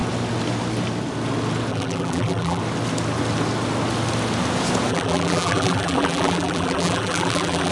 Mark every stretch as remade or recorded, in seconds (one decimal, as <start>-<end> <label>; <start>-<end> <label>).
0.0-1.7 recorded; 1.7-2.6 remade; 2.6-4.9 recorded; 4.9-7.7 remade